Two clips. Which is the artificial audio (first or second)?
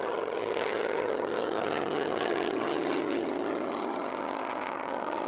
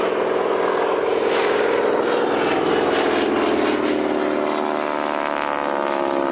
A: first